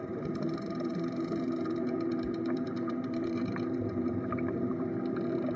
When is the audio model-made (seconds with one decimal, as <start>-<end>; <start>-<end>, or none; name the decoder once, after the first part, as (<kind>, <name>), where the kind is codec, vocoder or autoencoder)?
0.0-5.6 (vocoder, BigVGAN v2)